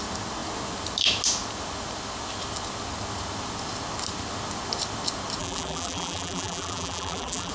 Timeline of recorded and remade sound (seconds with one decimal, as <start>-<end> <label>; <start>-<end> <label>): 0.0-5.4 recorded; 5.4-7.5 remade